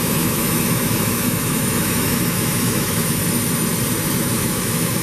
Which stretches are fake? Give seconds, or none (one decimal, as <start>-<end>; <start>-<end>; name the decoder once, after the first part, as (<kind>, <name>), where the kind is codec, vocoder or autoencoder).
0.0-3.2 (autoencoder, DAC-VAE); 4.1-5.0